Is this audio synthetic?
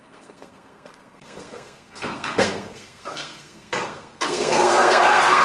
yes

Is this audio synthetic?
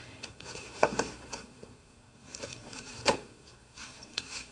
yes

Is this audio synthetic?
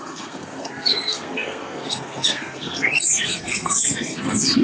yes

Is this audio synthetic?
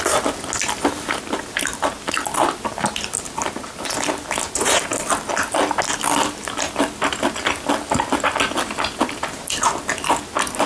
no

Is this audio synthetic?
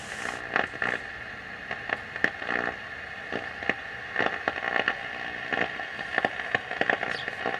no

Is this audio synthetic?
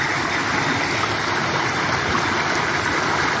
no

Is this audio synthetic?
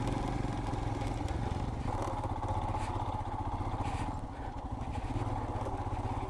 no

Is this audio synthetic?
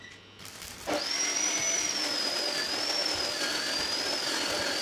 no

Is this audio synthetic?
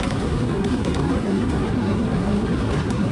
yes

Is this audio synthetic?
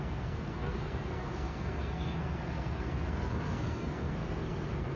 yes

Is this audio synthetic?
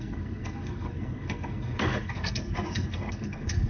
yes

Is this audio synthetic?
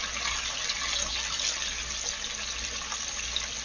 no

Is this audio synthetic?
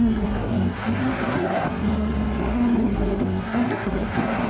yes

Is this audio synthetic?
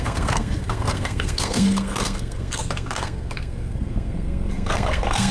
yes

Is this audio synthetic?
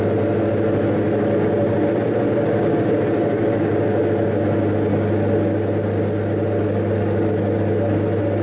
no